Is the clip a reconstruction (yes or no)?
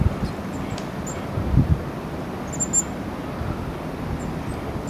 no